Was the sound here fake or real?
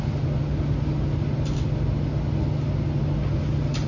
real